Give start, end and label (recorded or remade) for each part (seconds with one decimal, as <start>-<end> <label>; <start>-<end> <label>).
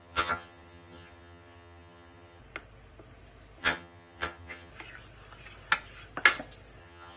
0.0-2.4 remade; 2.4-3.6 recorded; 3.6-4.7 remade; 4.7-6.8 recorded; 6.8-7.2 remade